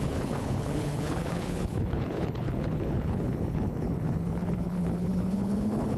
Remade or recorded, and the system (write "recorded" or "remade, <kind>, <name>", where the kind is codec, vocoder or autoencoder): remade, codec, HILCodec